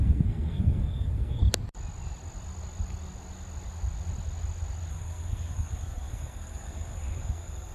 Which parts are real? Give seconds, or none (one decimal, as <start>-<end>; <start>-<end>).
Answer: 1.4-4.9